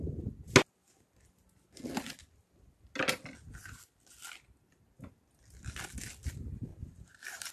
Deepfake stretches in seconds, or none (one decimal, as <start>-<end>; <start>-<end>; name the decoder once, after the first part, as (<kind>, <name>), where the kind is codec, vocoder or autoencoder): 6.7-7.5 (vocoder, BigVGAN v2)